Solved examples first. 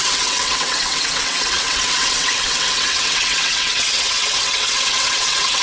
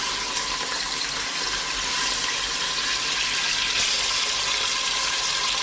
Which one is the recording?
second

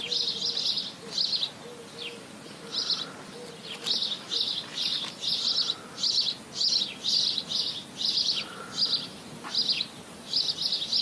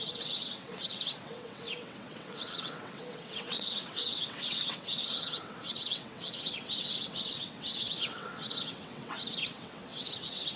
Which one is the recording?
first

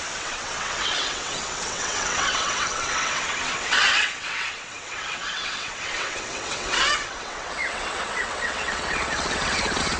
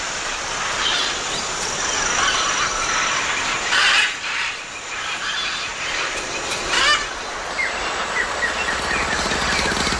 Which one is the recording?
second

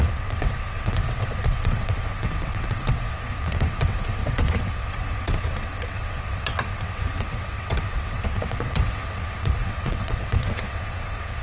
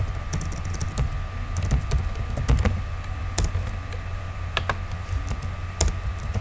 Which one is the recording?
second